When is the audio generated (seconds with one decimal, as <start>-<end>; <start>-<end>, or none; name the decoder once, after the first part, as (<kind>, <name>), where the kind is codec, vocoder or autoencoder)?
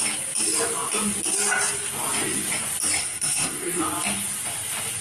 3.0-3.8 (codec, SNAC)